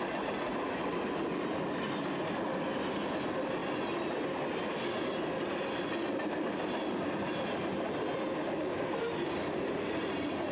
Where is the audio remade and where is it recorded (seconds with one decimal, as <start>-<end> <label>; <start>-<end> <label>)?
0.0-10.5 recorded